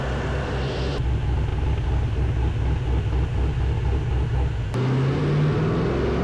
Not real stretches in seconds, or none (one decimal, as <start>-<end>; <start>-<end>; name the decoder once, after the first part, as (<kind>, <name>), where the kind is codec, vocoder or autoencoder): none